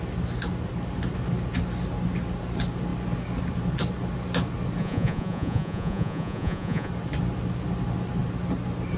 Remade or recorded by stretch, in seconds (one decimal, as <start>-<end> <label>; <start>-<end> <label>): 0.0-4.8 recorded; 4.8-6.9 remade; 6.9-9.0 recorded